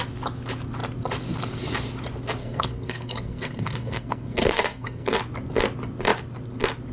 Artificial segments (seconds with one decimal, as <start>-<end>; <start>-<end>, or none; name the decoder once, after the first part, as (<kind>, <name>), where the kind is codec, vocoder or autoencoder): 2.4-5.2 (codec, SNAC)